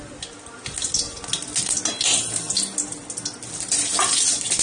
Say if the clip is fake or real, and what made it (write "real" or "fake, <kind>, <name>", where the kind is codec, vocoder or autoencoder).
real